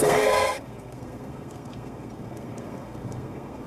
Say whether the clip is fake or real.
fake